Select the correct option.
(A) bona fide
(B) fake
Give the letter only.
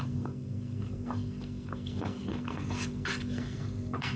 B